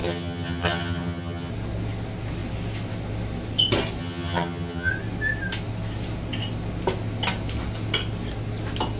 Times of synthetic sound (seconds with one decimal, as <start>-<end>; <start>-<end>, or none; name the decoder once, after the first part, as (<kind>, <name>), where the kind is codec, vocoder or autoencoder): 0.0-1.5 (vocoder, HiFi-GAN); 4.0-4.9